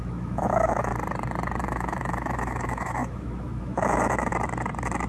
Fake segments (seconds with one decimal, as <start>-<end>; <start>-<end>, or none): 0.0-0.9; 1.6-4.3